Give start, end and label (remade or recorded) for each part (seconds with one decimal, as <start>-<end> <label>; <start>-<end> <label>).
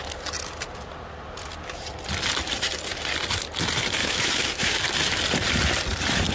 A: 0.0-4.0 recorded; 4.0-4.8 remade; 4.8-6.3 recorded